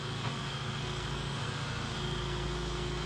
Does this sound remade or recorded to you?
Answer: remade